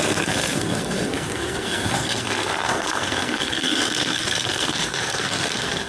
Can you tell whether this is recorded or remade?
remade